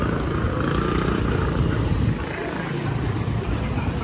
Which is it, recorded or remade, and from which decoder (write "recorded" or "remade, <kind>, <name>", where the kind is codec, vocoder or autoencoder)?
recorded